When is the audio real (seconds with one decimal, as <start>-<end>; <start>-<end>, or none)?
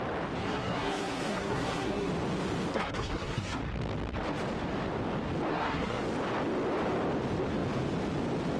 0.0-0.4; 2.1-2.7; 3.6-5.5; 6.0-8.6